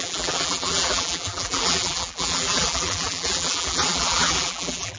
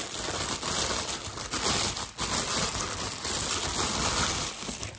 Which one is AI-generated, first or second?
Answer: first